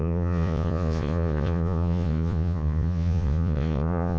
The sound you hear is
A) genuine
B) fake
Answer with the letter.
B